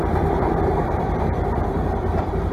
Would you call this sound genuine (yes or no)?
no